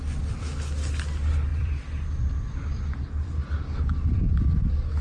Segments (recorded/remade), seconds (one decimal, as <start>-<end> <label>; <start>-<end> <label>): 0.0-1.5 recorded; 1.5-3.6 remade; 3.6-5.0 recorded